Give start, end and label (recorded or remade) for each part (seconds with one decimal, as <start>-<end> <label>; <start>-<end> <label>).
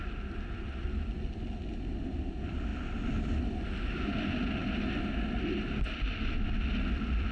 0.0-7.3 recorded